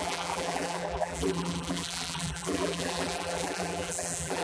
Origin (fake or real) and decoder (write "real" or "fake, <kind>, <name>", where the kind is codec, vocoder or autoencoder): fake, vocoder, BigVGAN v2